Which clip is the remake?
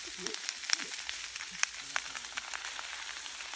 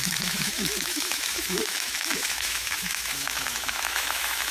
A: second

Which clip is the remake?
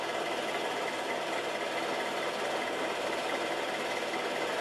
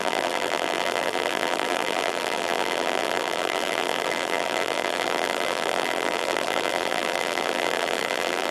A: second